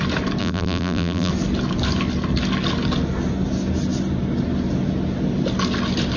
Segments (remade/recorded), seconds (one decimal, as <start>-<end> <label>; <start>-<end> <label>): 0.0-0.4 recorded; 0.4-1.3 remade; 1.3-6.2 recorded